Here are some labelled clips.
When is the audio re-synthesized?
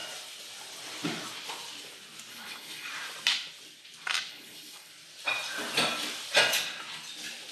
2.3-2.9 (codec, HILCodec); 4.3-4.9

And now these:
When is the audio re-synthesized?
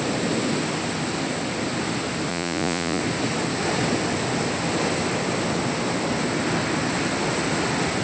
2.3-3.0 (vocoder, Vocos)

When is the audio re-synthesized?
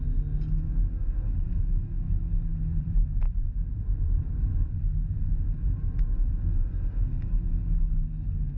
2.7-6.7 (vocoder, BigVGAN v2)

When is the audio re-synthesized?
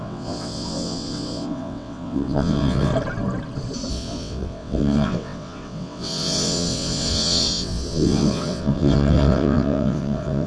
0.0-2.9 (vocoder, WaveNeXt); 3.9-10.5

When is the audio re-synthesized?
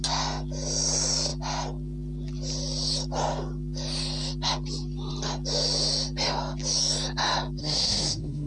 7.6-8.5 (codec, SNAC)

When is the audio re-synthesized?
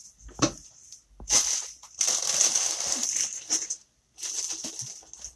none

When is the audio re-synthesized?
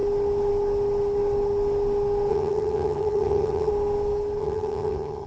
2.3-3.7 (vocoder, HiFi-GAN); 4.4-5.3